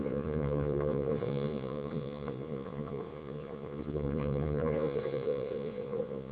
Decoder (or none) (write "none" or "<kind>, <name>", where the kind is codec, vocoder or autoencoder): vocoder, Vocos